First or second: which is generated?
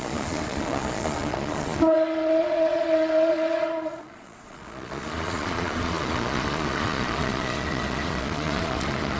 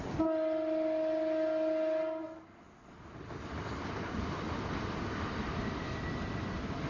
first